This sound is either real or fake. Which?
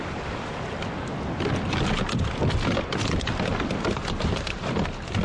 real